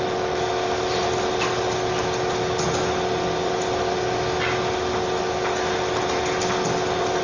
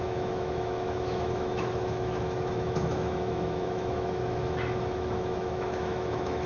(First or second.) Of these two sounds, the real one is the first